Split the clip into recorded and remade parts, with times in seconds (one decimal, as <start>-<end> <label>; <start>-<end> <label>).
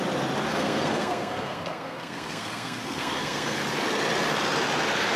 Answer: 0.0-0.5 recorded; 0.5-3.6 remade; 3.6-5.2 recorded